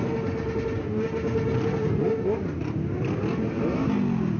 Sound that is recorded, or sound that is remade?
recorded